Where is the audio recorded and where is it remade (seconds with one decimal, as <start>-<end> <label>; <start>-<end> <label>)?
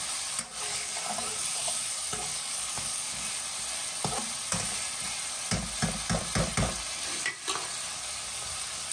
0.0-0.7 recorded; 0.7-3.3 remade; 3.3-7.9 recorded; 7.9-8.9 remade